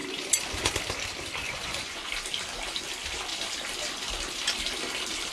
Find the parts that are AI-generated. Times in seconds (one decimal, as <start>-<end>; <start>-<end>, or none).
1.4-2.1